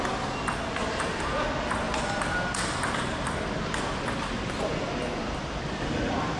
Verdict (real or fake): real